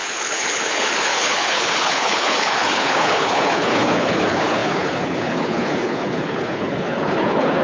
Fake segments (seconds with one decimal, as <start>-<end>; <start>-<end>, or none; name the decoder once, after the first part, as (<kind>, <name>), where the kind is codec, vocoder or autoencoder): 0.0-7.6 (codec, HILCodec)